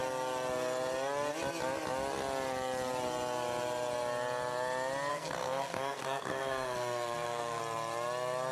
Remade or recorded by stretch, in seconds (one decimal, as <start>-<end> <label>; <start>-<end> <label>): 0.0-5.1 recorded; 5.1-7.6 remade; 7.6-8.5 recorded